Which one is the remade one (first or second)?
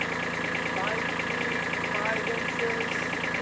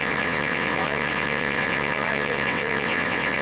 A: second